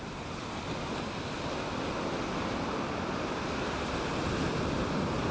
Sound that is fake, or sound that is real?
real